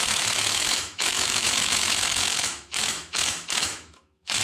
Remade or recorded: remade